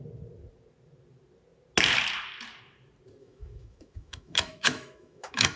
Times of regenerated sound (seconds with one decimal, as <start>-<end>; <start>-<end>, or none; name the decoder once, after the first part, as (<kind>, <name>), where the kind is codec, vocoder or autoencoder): 3.2-5.6 (autoencoder, DAC-VAE)